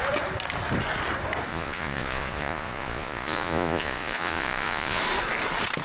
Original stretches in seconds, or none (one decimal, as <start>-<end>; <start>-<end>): 0.0-1.5; 5.0-5.8

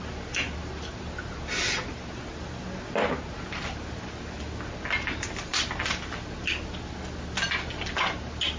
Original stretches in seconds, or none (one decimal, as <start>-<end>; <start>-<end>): 0.0-8.6

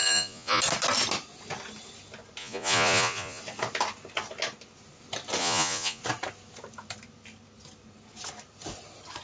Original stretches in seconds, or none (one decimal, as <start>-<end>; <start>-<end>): 0.6-2.4; 3.4-5.4; 6.0-9.2

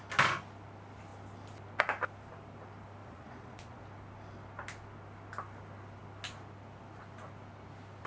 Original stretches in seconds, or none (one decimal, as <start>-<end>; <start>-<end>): 0.0-3.0; 3.8-8.1

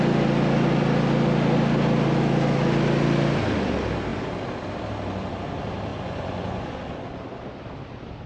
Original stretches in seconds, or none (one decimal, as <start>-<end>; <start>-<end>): 0.0-5.9; 6.8-8.3

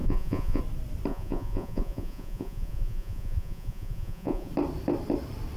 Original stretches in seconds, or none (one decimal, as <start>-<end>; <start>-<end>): 0.6-1.1; 4.5-5.6

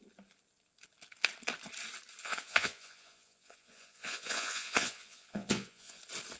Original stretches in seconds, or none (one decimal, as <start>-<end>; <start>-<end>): 0.0-2.2; 6.0-6.4

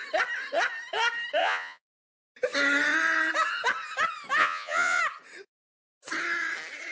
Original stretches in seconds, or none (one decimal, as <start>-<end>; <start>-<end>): 0.0-1.4; 1.9-4.4; 5.0-6.9